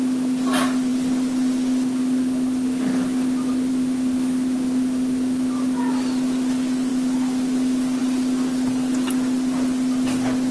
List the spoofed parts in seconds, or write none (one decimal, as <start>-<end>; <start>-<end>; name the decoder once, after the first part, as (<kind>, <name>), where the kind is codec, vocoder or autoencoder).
none